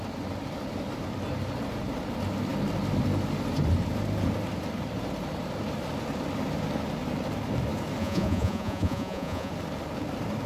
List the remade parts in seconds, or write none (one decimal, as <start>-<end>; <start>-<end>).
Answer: 8.0-9.5